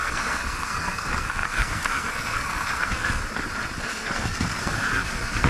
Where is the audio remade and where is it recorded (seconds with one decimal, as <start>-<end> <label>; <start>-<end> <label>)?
0.0-3.2 remade; 3.2-3.8 recorded; 3.8-5.5 remade